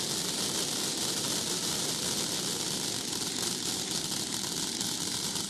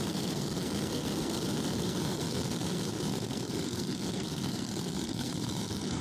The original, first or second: first